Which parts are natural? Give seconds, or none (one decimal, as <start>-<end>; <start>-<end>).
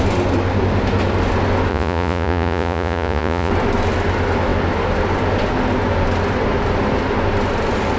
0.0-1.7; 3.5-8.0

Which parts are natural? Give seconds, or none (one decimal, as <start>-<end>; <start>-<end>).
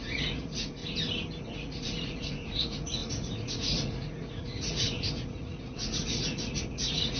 0.8-1.4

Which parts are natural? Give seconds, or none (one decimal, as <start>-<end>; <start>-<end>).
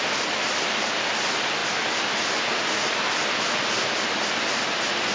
0.0-5.1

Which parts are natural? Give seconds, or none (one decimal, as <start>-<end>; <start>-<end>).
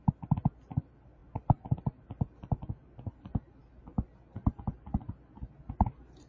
0.0-6.3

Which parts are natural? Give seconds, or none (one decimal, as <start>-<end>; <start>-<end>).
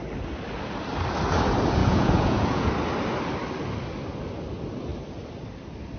0.0-1.8; 2.7-6.0